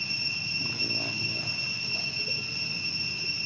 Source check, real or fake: real